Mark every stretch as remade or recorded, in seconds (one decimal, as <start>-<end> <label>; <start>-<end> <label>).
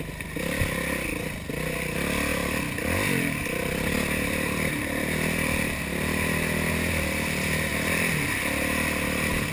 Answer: 0.0-2.3 recorded; 2.3-5.6 remade; 5.6-9.5 recorded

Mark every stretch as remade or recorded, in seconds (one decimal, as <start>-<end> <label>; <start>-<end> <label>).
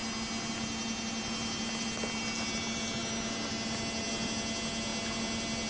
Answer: 0.0-5.7 recorded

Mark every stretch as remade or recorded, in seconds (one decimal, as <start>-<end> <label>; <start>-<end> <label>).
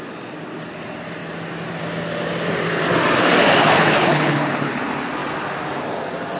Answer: 0.0-3.6 recorded; 3.6-4.8 remade; 4.8-6.4 recorded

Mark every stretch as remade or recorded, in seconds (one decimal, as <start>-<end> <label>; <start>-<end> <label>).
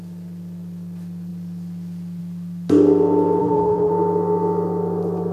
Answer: 0.0-3.4 recorded; 3.4-3.9 remade; 3.9-5.3 recorded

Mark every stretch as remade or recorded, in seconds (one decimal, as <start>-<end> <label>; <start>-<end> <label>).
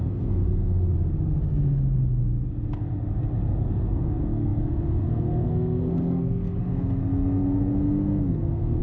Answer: 0.0-0.8 remade; 0.8-3.7 recorded; 3.7-8.8 remade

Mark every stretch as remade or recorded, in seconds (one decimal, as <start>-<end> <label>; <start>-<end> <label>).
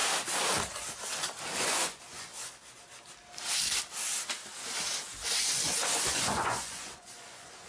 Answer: 0.0-1.6 recorded; 1.6-2.3 remade; 2.3-5.4 recorded; 5.4-7.7 remade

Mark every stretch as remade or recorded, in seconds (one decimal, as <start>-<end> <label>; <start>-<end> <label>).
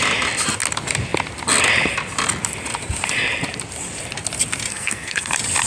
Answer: 0.0-4.7 recorded; 4.7-5.3 remade; 5.3-5.7 recorded